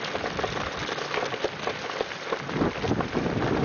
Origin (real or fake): real